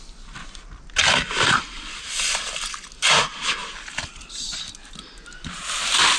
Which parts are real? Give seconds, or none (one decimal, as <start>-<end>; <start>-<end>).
0.0-6.2